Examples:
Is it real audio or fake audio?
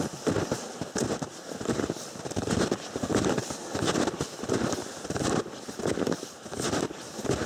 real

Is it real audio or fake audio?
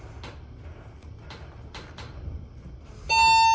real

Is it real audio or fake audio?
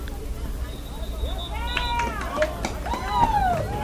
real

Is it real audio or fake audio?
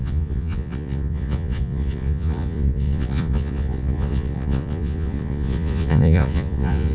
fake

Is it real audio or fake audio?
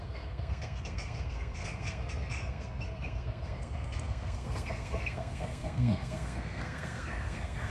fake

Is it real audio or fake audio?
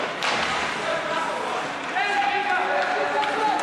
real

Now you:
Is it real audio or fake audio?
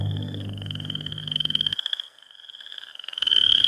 fake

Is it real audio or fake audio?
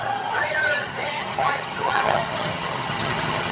fake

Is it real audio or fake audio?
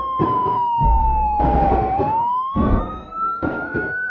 fake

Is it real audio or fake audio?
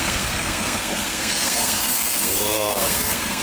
fake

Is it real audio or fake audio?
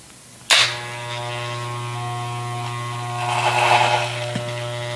real